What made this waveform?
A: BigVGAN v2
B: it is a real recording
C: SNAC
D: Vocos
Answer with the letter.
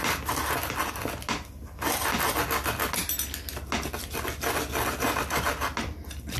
B